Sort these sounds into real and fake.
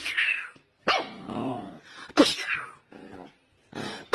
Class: real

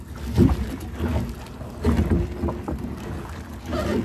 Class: real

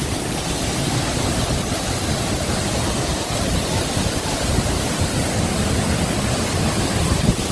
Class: fake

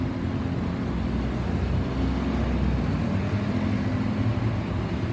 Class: real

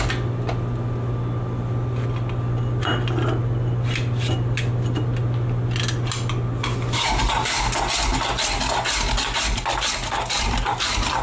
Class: real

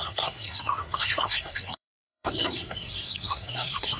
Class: fake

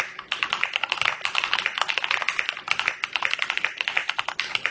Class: real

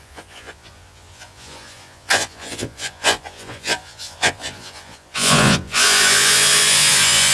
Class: fake